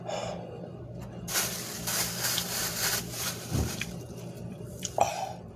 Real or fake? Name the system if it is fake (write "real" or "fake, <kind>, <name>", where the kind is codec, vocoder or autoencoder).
fake, vocoder, BigVGAN v2